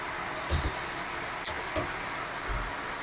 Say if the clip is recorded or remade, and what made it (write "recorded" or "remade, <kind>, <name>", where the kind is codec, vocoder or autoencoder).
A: recorded